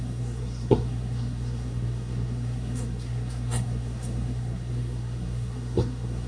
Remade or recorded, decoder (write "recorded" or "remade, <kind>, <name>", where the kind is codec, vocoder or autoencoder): remade, codec, SNAC